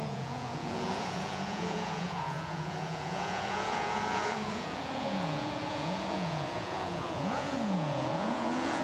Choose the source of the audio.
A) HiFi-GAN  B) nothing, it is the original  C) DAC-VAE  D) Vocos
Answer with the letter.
D